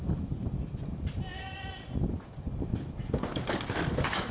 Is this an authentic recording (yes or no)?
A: yes